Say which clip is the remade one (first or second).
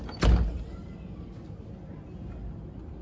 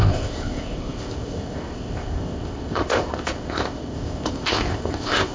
second